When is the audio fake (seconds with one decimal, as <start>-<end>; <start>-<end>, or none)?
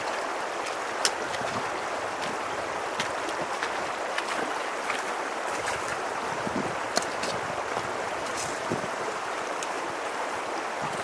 5.9-6.9; 8.3-10.4